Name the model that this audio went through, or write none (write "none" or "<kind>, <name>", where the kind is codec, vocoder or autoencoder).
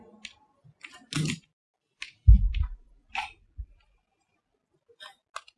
none